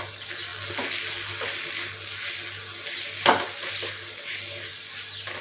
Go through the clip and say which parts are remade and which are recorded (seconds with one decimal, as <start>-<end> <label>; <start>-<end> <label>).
0.0-5.4 recorded